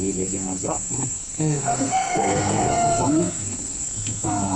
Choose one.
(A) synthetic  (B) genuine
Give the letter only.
A